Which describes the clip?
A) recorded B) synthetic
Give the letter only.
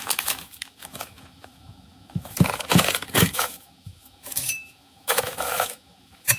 B